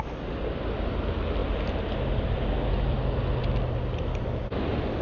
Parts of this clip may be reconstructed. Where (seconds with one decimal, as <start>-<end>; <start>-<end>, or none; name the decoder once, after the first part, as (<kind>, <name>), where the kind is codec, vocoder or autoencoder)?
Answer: none